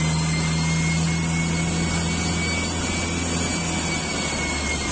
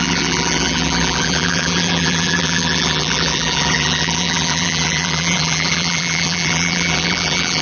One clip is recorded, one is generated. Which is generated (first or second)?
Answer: second